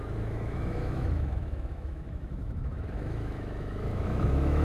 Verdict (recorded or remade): remade